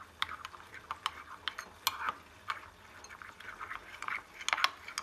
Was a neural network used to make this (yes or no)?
no